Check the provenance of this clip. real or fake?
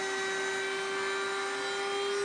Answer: real